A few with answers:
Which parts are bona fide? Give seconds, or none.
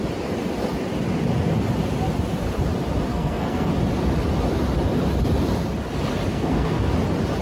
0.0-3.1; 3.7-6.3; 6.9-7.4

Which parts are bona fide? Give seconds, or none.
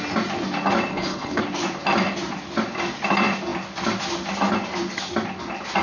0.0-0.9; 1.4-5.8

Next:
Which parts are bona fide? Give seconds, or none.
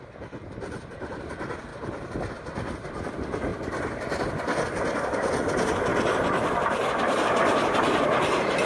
0.0-1.7; 2.3-5.9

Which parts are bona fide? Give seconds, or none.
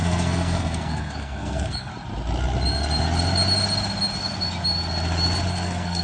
1.9-5.5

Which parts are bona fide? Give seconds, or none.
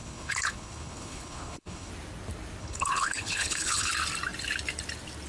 1.9-2.6; 3.9-5.3